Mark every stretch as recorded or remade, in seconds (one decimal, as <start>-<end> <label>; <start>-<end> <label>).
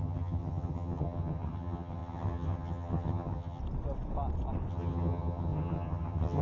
0.0-3.6 remade; 3.6-4.7 recorded; 4.7-6.4 remade